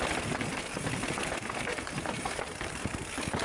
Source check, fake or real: real